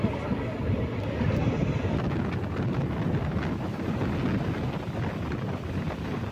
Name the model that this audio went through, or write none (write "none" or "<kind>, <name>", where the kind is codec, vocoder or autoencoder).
none